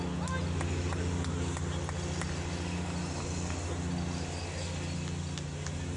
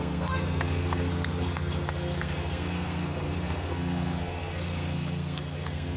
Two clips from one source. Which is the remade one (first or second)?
second